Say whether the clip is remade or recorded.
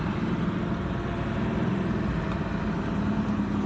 recorded